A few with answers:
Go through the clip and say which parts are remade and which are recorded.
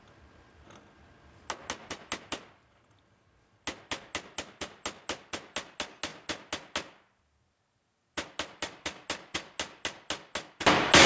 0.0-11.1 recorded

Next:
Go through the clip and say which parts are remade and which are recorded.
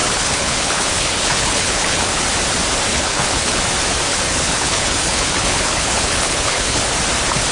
0.0-2.2 remade; 2.2-2.9 recorded; 2.9-3.6 remade; 3.6-4.1 recorded; 4.1-6.8 remade; 6.8-7.5 recorded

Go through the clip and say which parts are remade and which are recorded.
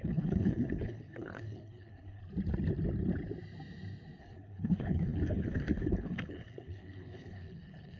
0.0-2.2 remade; 2.2-4.2 recorded; 4.2-8.0 remade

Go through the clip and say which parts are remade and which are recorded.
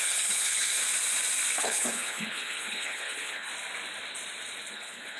0.0-0.8 remade; 0.8-1.6 recorded; 1.6-3.5 remade; 3.5-4.7 recorded; 4.7-5.2 remade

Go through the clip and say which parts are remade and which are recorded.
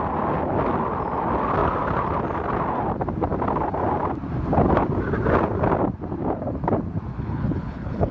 0.0-7.1 recorded; 7.1-8.1 remade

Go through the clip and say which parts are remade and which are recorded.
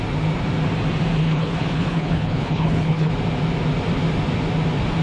0.0-1.2 recorded; 1.2-3.1 remade; 3.1-5.0 recorded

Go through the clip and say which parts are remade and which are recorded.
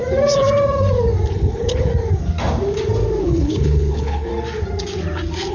0.0-1.3 recorded; 1.3-1.9 remade; 1.9-3.2 recorded; 3.2-4.3 remade; 4.3-5.5 recorded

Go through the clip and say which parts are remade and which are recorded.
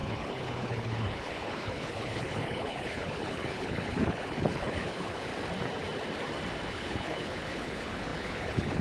0.0-5.3 remade; 5.3-6.7 recorded; 6.7-8.8 remade